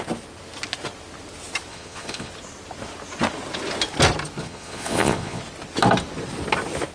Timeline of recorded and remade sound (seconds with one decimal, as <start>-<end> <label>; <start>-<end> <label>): 0.0-1.7 recorded; 1.7-2.3 remade; 2.3-4.4 recorded; 4.4-5.4 remade; 5.4-6.9 recorded